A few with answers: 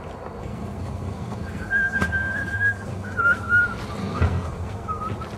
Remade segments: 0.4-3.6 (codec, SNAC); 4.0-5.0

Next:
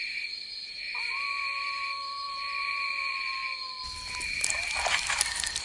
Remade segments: 0.0-3.4 (vocoder, BigVGAN v2)

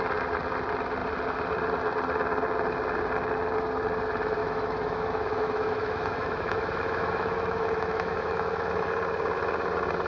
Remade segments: 4.4-8.9 (autoencoder, DAC-VAE)

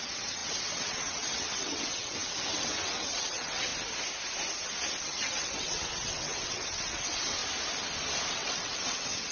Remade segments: 0.0-3.7 (vocoder, WaveNeXt); 5.0-7.4; 8.3-9.3

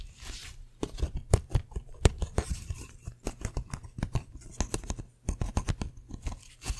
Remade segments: 0.4-4.3 (vocoder, BigVGAN v2)

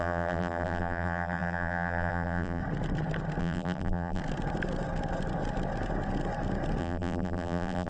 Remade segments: 0.0-2.6 (vocoder, BigVGAN v2); 3.4-4.2; 6.8-7.9

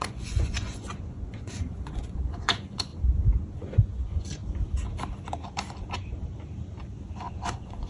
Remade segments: 0.0-2.9 (vocoder, Vocos); 3.6-4.4; 7.3-7.9